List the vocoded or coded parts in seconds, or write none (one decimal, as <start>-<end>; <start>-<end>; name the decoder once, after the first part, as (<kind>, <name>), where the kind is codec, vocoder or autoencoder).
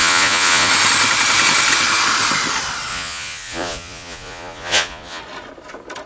0.0-0.7 (vocoder, Vocos); 2.9-5.2